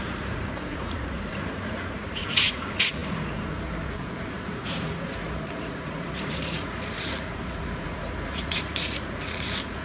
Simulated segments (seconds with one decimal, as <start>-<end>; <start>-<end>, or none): 0.0-9.8